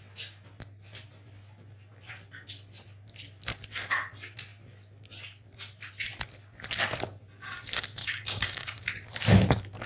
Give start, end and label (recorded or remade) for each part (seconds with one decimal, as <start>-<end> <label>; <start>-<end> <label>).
0.0-8.0 recorded; 8.0-8.8 remade; 8.8-9.9 recorded